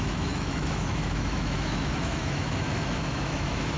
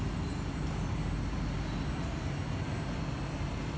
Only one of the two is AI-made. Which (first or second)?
first